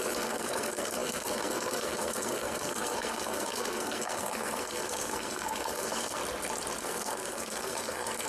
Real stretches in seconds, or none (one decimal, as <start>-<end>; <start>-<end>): 6.2-6.8